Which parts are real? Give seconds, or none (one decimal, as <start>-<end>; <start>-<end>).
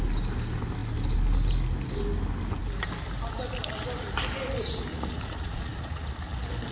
0.0-4.9; 6.1-6.7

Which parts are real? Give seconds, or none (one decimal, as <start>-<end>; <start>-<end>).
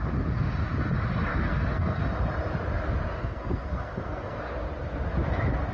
0.0-1.3; 2.0-3.2; 4.4-5.7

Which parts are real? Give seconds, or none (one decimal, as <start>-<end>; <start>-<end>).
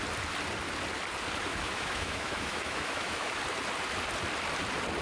0.0-1.5; 3.4-5.0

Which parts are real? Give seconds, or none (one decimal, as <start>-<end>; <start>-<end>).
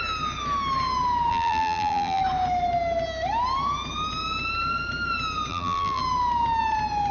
0.0-1.3; 2.2-5.5; 6.0-7.1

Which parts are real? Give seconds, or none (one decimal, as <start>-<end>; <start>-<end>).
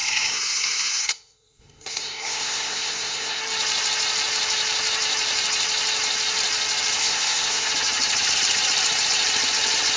3.4-7.0; 7.7-10.0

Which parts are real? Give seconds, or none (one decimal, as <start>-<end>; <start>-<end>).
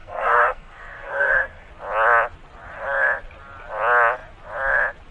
1.7-5.1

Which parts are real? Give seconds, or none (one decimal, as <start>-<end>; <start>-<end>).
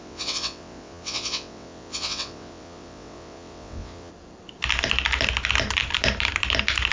4.1-6.9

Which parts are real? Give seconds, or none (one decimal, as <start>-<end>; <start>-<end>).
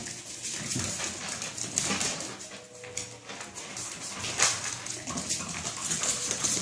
0.0-6.6